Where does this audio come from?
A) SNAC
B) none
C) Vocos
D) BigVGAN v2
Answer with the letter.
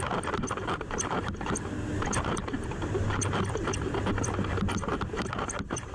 B